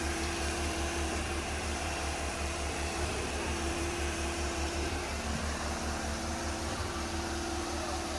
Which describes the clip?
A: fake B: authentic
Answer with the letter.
A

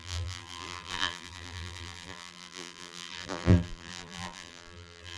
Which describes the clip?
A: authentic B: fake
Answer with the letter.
B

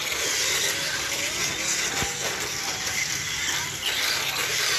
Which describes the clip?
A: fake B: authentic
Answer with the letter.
B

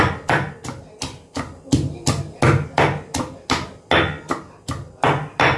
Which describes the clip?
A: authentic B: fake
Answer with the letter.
A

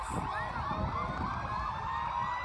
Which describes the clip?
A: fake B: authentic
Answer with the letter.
B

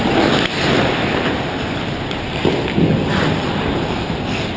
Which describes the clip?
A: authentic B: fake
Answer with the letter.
B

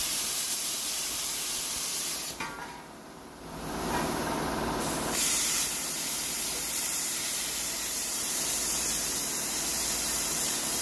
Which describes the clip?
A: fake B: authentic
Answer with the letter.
A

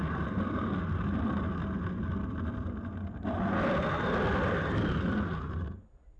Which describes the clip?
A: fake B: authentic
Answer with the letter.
B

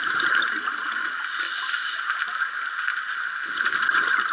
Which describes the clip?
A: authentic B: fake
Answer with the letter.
A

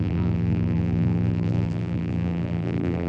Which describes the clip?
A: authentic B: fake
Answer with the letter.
B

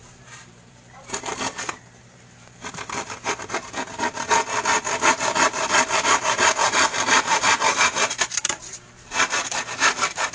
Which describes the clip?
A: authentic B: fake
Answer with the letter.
B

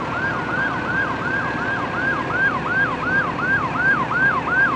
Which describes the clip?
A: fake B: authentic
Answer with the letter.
B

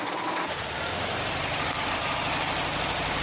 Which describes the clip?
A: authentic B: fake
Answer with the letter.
A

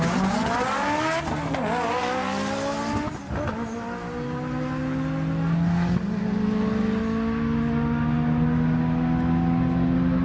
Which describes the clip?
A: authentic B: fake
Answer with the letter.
A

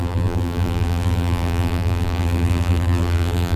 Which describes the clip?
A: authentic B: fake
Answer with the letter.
B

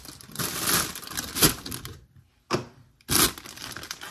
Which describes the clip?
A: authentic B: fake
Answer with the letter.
A